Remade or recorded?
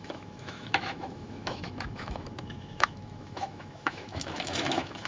remade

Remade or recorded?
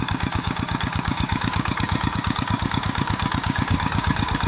remade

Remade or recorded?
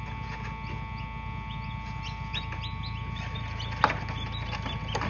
recorded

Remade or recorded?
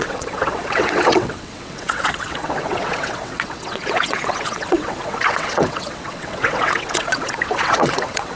remade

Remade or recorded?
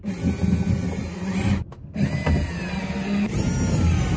recorded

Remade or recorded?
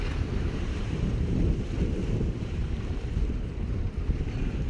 remade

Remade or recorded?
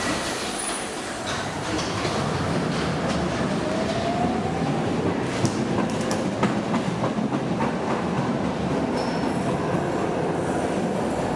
recorded